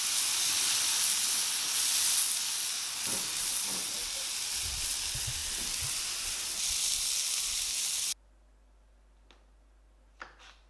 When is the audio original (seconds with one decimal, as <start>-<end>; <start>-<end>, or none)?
0.0-10.7